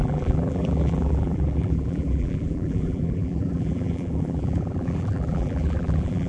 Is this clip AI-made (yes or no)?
yes